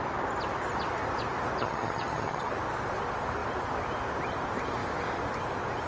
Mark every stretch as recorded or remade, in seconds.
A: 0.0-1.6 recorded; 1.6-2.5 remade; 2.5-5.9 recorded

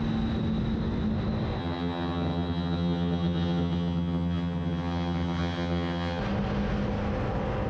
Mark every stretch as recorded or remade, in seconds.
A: 0.0-1.6 recorded; 1.6-6.2 remade; 6.2-7.7 recorded

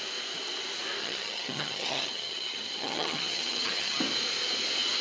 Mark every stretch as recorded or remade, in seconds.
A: 0.0-1.0 recorded; 1.0-4.0 remade; 4.0-5.0 recorded